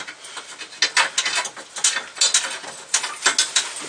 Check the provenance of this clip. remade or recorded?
recorded